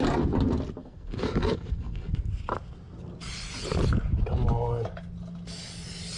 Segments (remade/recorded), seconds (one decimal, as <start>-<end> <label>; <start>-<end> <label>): 0.0-0.8 recorded; 0.8-2.3 remade; 2.3-6.2 recorded